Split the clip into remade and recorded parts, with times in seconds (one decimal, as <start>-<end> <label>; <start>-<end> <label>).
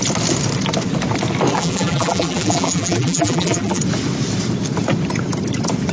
0.0-1.5 recorded; 1.5-3.8 remade; 3.8-5.9 recorded